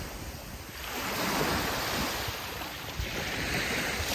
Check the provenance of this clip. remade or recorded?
recorded